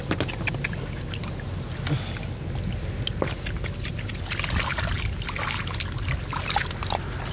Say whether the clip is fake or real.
real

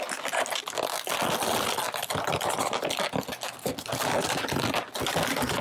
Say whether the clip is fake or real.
real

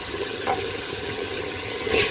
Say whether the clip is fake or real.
fake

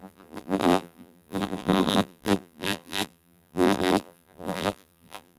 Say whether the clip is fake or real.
fake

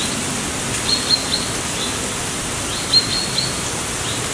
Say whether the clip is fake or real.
real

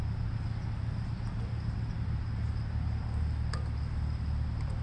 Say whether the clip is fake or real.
real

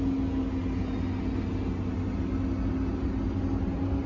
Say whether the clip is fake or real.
real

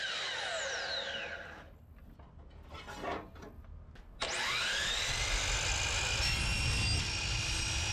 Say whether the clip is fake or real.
real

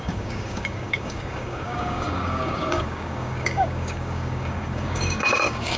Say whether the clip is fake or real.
fake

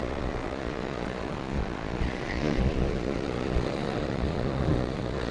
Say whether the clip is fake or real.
fake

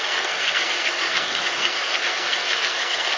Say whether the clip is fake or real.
fake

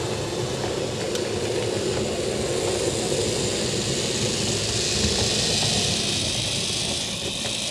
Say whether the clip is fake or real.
real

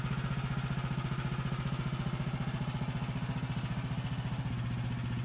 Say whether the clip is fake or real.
real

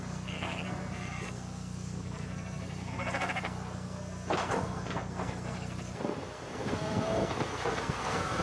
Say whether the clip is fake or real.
fake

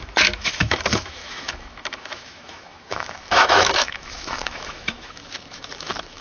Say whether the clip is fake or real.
fake